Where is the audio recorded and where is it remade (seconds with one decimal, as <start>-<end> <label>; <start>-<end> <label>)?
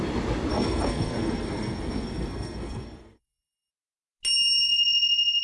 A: 0.0-0.5 recorded; 0.5-3.7 remade; 3.7-5.4 recorded